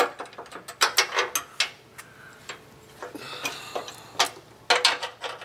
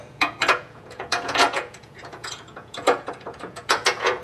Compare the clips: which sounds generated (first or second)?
second